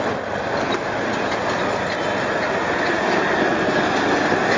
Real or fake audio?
real